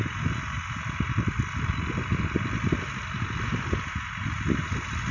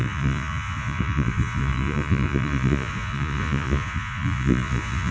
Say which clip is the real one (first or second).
first